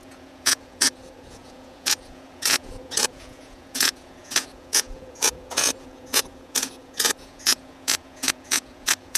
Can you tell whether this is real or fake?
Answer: fake